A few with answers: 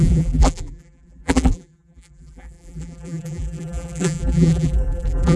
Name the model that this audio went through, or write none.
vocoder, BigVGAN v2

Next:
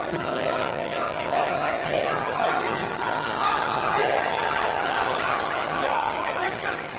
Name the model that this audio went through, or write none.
vocoder, HiFi-GAN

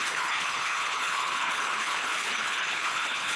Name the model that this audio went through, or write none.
codec, HILCodec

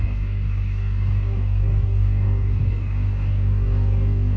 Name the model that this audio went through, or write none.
codec, DAC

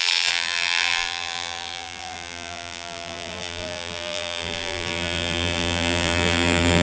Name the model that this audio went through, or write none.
vocoder, BigVGAN v2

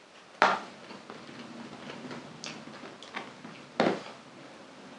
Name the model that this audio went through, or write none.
none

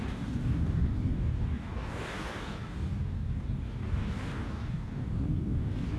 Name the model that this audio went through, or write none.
codec, DAC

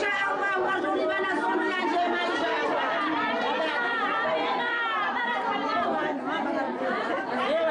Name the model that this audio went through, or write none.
vocoder, BigVGAN v2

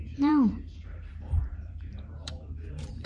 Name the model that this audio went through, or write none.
vocoder, BigVGAN v2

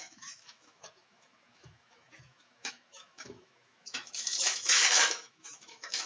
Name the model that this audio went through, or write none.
autoencoder, DAC-VAE